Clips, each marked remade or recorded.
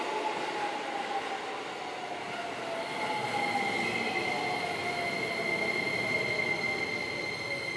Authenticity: recorded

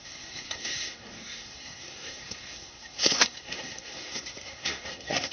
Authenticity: remade